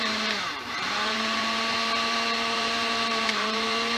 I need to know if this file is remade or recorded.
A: remade